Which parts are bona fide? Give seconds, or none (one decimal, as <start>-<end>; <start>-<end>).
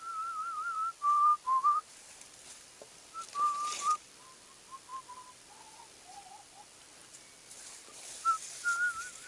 7.0-9.3